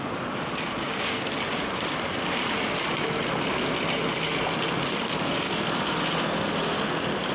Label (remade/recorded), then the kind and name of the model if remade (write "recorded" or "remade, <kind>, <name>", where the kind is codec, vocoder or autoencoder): recorded